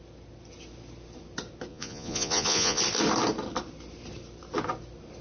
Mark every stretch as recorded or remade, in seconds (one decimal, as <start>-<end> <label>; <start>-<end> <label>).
0.0-1.7 recorded; 1.7-2.8 remade; 2.8-5.2 recorded